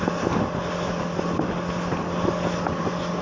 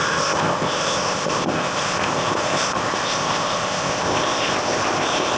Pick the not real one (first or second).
second